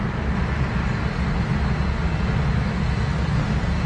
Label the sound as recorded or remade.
recorded